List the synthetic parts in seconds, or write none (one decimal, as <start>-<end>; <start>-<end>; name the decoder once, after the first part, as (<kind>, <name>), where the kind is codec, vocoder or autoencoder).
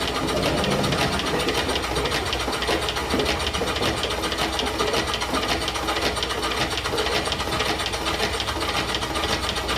none